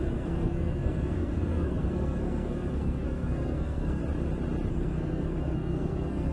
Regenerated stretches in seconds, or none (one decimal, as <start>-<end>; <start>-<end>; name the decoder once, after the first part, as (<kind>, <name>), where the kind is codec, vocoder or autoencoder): 0.0-4.0 (codec, SNAC); 4.7-6.3